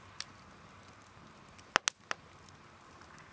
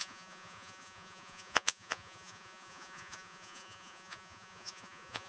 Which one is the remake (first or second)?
second